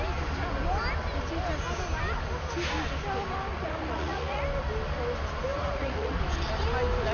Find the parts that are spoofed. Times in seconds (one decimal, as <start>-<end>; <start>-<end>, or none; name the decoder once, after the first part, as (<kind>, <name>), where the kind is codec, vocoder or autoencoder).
3.5-4.4 (vocoder, Vocos); 5.5-6.2